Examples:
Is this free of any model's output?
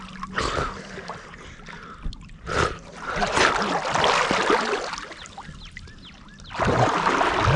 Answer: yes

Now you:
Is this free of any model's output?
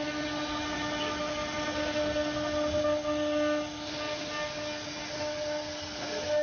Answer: yes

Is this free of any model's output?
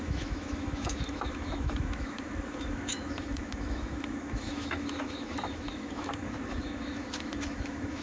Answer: no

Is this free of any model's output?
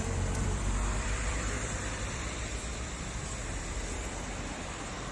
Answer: no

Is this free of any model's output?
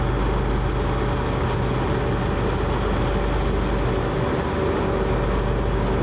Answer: yes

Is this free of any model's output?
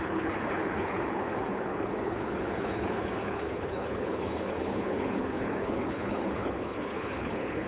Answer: no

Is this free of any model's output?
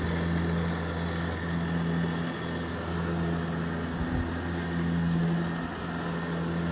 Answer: yes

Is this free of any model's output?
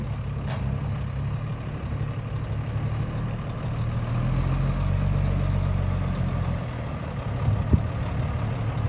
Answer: yes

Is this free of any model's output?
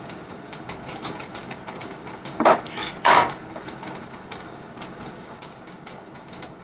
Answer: no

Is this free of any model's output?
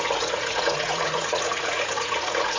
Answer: no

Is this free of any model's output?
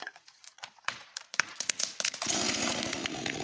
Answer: no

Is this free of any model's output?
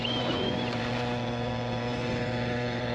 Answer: no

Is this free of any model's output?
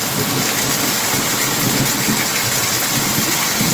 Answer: yes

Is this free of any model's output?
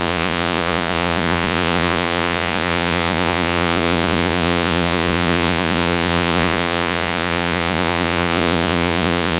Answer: no